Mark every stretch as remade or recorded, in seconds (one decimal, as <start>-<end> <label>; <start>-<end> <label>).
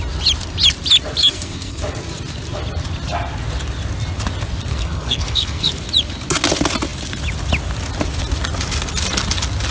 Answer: 0.0-1.2 recorded; 1.2-1.8 remade; 1.8-4.7 recorded; 4.7-5.7 remade; 5.7-9.7 recorded